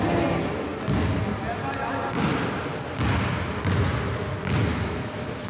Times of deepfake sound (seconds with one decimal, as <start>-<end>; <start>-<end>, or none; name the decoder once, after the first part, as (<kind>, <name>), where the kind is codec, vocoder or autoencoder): 4.7-5.5 (autoencoder, DAC-VAE)